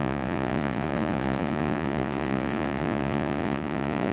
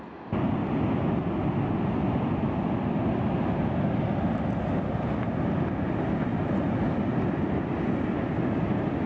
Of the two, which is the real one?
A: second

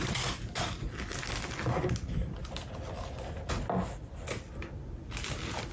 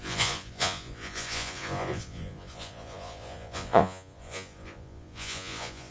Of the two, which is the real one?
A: first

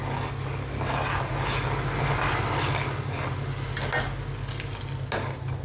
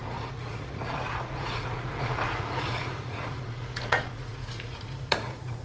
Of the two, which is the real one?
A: first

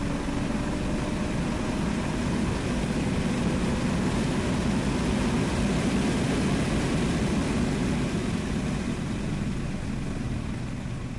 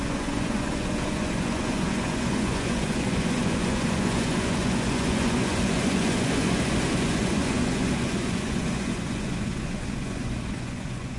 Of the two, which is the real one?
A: first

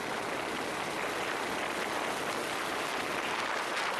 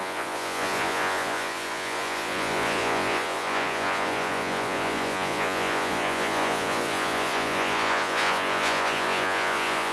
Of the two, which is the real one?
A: first